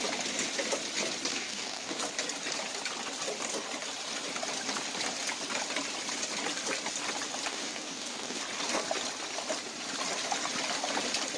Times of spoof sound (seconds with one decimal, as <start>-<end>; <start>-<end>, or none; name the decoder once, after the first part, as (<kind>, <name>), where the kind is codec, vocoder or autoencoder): 1.3-2.0 (codec, DAC); 7.5-8.4

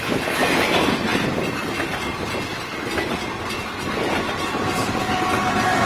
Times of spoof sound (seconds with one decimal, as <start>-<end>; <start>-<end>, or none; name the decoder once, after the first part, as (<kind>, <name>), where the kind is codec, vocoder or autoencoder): none

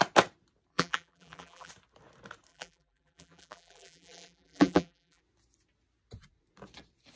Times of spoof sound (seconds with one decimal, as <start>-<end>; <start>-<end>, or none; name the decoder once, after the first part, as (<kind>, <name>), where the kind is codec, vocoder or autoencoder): 0.7-1.7 (vocoder, BigVGAN v2); 2.5-5.2

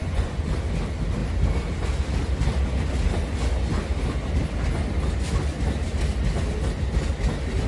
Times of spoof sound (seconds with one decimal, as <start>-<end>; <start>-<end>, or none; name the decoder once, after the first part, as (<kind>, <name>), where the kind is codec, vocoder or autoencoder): 0.0-0.5 (vocoder, Vocos)